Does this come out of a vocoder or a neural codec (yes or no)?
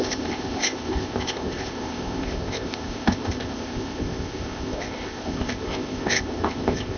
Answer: yes